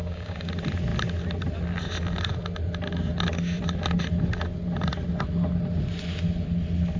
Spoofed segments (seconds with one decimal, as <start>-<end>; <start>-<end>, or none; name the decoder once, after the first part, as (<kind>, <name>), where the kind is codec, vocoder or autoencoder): 0.0-0.5 (codec, DAC)